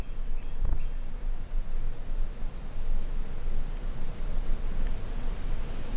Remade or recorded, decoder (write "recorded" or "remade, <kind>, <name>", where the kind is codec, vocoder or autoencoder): recorded